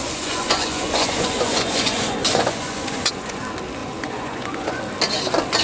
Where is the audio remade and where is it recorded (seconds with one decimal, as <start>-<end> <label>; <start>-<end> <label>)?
0.0-3.4 remade; 3.4-3.8 recorded; 3.8-4.8 remade; 4.8-5.6 recorded